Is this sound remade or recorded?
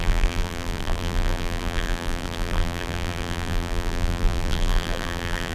remade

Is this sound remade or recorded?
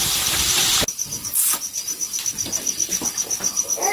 remade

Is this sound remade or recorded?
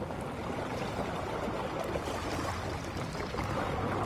recorded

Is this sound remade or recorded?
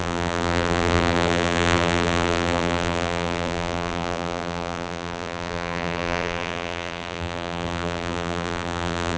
remade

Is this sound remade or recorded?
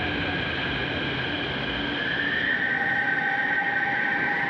remade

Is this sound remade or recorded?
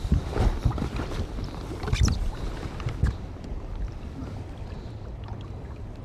remade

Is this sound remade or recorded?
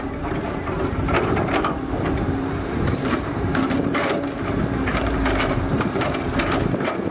remade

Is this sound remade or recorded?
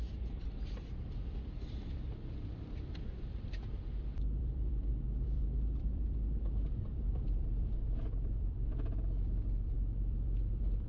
remade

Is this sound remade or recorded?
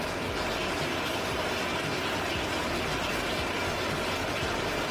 recorded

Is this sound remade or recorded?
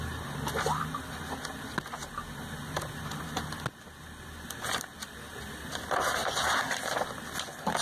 recorded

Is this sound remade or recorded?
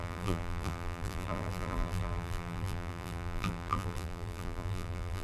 remade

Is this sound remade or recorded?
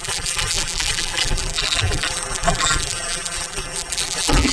remade